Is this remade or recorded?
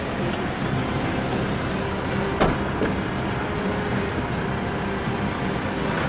recorded